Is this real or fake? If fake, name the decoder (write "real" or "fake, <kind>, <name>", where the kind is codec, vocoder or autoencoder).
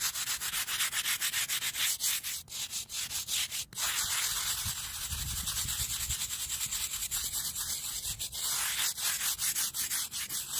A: real